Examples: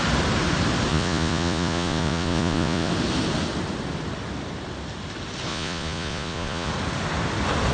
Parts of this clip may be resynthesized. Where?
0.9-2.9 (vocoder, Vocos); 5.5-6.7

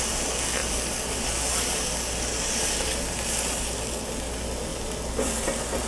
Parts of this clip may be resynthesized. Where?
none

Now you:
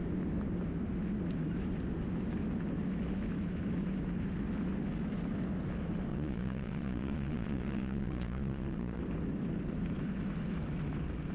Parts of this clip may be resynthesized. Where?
6.1-9.0 (vocoder, Vocos)

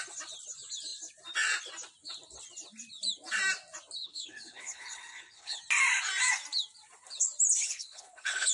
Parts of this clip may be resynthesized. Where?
4.0-5.6 (codec, HILCodec); 7.6-8.5

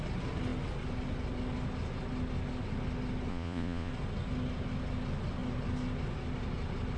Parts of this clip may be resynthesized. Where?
3.3-3.9 (vocoder, Vocos)

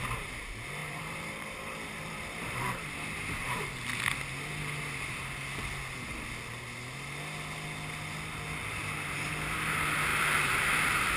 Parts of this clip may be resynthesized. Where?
0.8-2.9 (vocoder, BigVGAN v2); 10.1-11.2

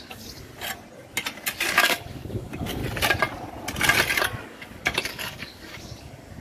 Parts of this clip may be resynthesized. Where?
0.0-0.5 (codec, DAC); 1.7-2.8; 4.2-6.4

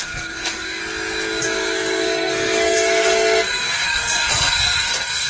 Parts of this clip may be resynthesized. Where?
0.0-0.8 (codec, SNAC); 1.4-5.3